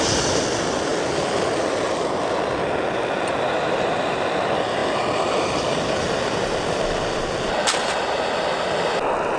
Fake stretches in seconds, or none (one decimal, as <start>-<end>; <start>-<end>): none